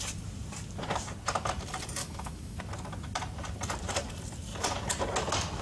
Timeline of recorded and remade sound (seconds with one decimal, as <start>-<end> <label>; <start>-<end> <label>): 0.0-2.0 recorded; 2.0-2.6 remade; 2.6-5.6 recorded